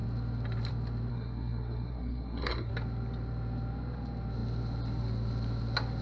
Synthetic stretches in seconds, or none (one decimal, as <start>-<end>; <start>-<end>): 1.1-2.7

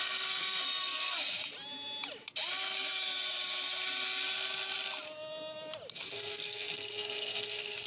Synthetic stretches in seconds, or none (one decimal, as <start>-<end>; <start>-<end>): 0.0-1.4; 5.9-7.9

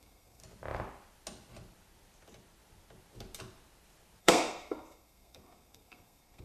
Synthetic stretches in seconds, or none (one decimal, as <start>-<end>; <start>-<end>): 0.0-0.4; 4.2-6.4